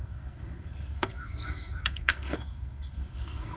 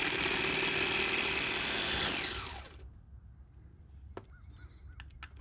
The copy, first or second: first